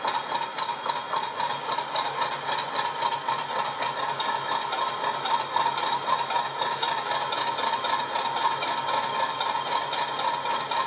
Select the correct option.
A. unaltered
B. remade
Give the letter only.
A